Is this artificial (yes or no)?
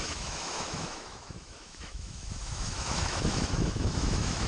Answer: yes